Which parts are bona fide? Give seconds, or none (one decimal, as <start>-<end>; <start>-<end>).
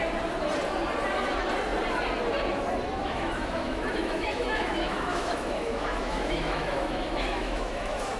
0.0-3.0